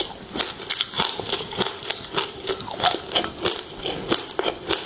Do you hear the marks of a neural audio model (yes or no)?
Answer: no